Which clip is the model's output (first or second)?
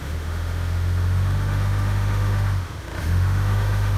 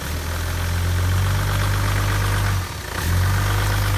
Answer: first